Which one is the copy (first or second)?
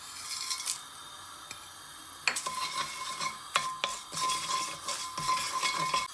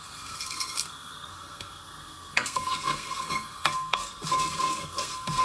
second